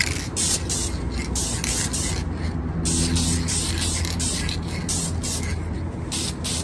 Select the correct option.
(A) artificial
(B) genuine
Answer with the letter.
B